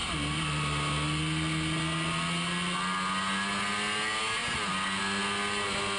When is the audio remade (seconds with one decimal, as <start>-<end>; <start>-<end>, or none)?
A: none